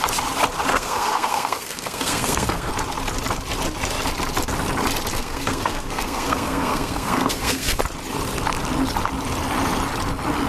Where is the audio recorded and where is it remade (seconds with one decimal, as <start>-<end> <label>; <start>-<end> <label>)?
0.0-0.7 recorded; 0.7-2.7 remade; 2.7-5.1 recorded; 5.1-7.8 remade; 7.8-10.5 recorded